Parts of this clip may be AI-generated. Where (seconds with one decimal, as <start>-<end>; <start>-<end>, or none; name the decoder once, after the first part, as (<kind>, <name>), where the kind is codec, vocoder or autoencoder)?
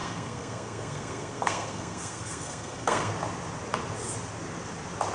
0.0-3.1 (codec, SNAC)